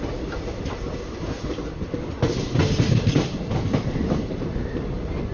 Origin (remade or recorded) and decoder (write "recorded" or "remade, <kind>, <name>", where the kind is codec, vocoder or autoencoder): recorded